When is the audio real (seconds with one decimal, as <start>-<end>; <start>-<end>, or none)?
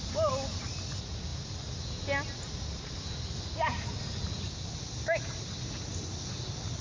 0.0-6.8